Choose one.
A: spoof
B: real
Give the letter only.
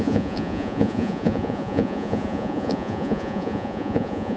A